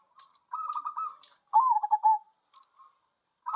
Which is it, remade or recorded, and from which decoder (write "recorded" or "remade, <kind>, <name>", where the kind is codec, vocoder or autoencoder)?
recorded